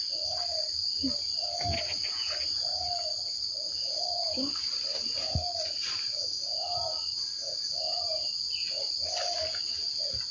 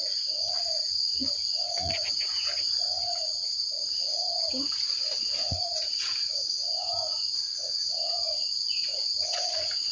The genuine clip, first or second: first